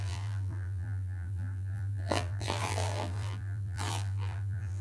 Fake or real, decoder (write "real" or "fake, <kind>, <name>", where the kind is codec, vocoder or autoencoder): fake, vocoder, BigVGAN v2